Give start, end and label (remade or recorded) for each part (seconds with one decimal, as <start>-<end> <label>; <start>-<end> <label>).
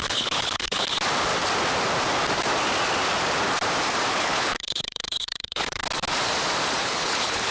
0.0-0.9 remade; 0.9-4.1 recorded; 4.1-5.8 remade; 5.8-6.8 recorded; 6.8-7.5 remade